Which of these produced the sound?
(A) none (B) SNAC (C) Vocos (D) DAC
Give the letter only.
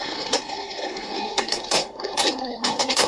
B